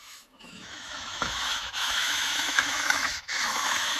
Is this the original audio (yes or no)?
no